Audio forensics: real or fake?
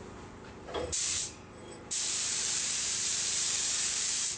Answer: fake